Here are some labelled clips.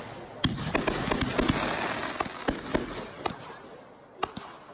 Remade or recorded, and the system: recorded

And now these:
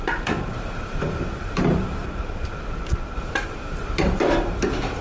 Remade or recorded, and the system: remade, vocoder, BigVGAN v2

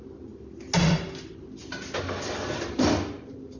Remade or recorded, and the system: recorded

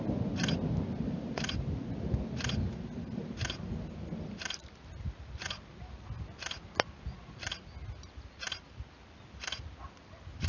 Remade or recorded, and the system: recorded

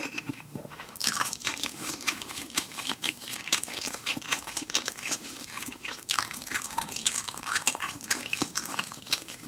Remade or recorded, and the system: remade, autoencoder, DAC-VAE